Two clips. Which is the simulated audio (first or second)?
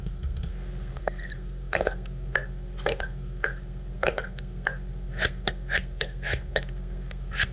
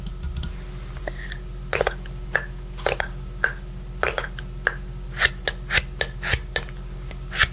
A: first